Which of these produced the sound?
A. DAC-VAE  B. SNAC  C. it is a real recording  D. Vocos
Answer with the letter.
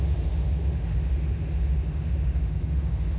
A